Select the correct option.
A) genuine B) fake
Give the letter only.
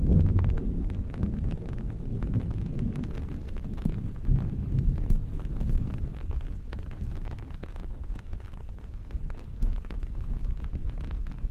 B